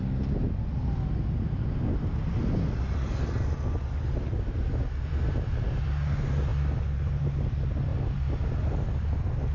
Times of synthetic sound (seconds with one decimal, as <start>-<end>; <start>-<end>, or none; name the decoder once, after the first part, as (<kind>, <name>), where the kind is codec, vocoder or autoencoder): none